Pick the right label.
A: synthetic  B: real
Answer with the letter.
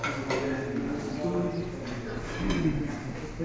B